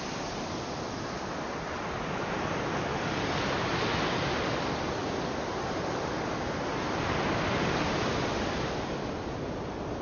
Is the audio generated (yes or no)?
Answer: no